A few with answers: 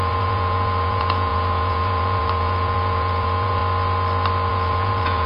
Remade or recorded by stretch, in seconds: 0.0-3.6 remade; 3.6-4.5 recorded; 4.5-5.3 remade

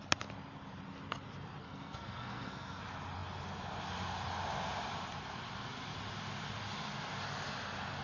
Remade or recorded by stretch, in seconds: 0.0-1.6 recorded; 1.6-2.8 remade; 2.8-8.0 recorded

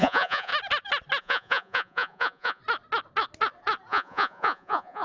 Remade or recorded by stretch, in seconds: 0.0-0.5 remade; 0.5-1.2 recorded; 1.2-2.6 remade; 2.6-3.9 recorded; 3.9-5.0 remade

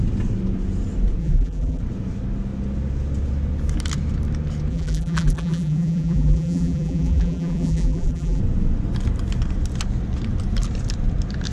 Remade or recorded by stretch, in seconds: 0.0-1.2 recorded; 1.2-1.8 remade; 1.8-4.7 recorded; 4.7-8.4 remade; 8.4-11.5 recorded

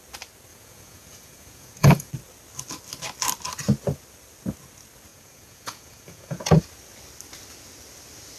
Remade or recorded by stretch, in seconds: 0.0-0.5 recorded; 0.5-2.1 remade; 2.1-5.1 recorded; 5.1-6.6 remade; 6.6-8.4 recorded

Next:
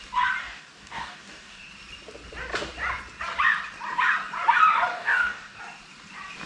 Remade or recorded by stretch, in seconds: 0.0-0.4 recorded; 0.4-1.7 remade; 1.7-4.9 recorded; 4.9-5.6 remade; 5.6-6.5 recorded

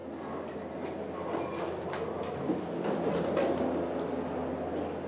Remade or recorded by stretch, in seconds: 0.0-5.1 recorded